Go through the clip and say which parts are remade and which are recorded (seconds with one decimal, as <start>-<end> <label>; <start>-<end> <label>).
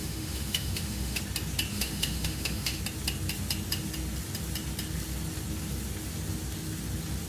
0.0-1.2 remade; 1.2-1.7 recorded; 1.7-2.8 remade; 2.8-7.3 recorded